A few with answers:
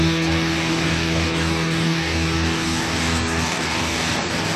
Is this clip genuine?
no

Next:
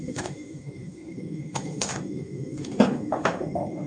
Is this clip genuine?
no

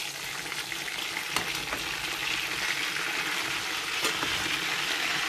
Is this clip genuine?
yes